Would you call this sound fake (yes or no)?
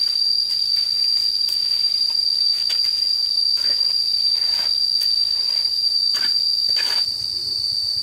yes